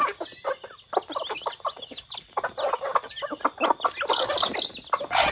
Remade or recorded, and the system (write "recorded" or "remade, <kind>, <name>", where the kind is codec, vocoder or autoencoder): recorded